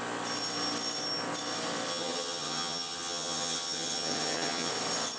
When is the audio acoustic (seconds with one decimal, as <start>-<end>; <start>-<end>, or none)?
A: 0.0-1.9; 4.7-5.2